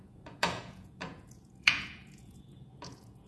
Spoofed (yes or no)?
yes